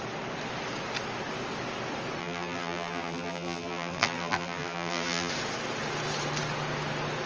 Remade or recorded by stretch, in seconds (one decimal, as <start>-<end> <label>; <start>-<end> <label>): 0.0-2.2 recorded; 2.2-5.3 remade; 5.3-7.3 recorded